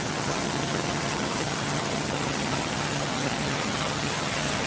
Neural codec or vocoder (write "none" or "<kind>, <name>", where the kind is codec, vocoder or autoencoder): vocoder, HiFi-GAN